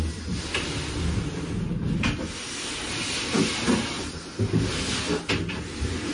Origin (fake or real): real